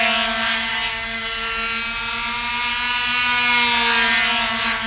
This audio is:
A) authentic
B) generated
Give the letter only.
A